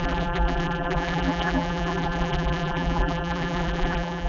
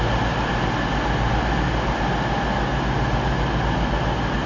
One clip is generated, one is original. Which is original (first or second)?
second